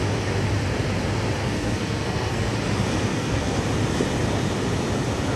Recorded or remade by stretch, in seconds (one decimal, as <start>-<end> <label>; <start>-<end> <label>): 0.0-1.4 recorded; 1.4-2.5 remade; 2.5-3.1 recorded; 3.1-3.6 remade; 3.6-5.4 recorded